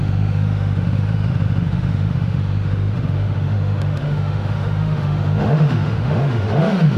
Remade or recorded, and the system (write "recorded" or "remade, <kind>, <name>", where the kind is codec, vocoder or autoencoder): remade, autoencoder, DAC-VAE